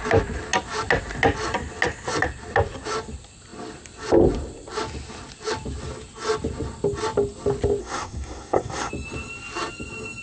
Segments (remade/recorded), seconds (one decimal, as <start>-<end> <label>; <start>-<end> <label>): 0.0-7.8 recorded; 7.8-8.9 remade; 8.9-10.2 recorded